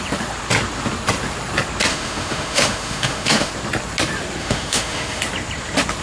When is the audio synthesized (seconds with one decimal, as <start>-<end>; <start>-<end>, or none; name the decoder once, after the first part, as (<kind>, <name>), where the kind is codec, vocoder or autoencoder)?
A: 1.9-3.5 (autoencoder, DAC-VAE); 4.4-5.2